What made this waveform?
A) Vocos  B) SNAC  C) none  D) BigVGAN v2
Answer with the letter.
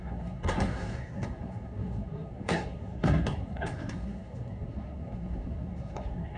B